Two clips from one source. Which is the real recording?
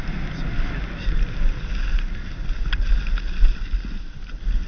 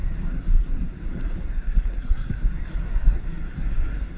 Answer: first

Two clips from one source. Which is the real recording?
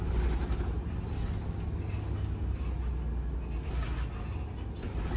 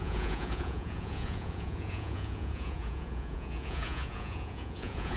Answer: first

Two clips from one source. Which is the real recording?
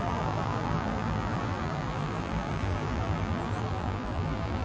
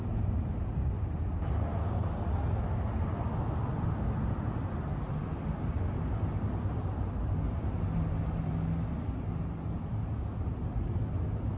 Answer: second